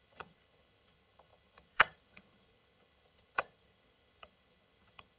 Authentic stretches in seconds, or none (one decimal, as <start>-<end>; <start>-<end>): none

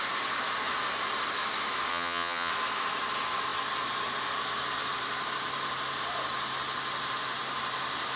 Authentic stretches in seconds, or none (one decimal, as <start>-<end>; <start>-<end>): 0.0-1.9; 2.5-8.2

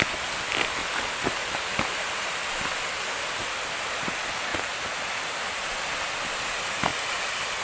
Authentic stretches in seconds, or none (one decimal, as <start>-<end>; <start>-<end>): 0.0-7.6

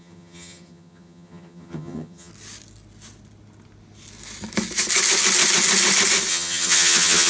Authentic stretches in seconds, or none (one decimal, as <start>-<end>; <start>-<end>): 2.3-6.3

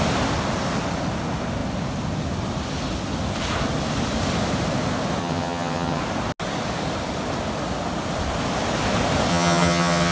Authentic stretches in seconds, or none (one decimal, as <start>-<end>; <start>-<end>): 0.0-5.2; 6.0-9.3

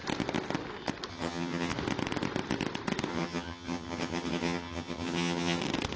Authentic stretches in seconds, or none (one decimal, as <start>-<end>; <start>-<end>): 0.0-1.1; 1.7-3.1; 5.6-6.0

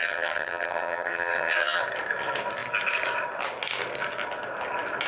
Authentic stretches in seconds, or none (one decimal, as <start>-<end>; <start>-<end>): 1.8-5.1